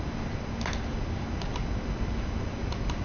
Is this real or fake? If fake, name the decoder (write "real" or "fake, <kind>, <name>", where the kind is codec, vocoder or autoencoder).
real